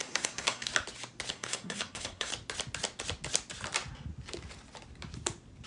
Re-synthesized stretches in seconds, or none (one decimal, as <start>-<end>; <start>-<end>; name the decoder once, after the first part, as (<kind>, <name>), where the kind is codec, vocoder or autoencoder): 0.0-0.7 (codec, SNAC); 1.3-2.3